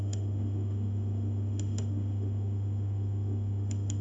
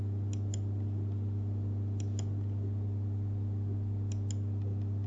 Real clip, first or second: second